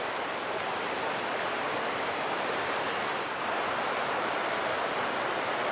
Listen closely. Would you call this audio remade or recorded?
remade